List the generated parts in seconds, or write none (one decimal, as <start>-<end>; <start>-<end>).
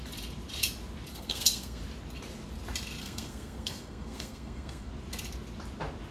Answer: 1.1-1.8; 3.0-4.9